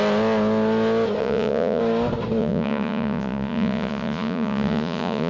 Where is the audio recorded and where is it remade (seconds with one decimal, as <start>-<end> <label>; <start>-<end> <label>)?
0.0-1.2 recorded; 1.2-1.8 remade; 1.8-2.4 recorded; 2.4-5.3 remade